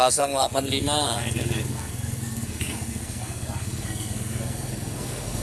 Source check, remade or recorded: remade